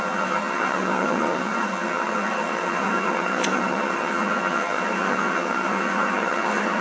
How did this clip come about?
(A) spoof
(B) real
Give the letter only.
A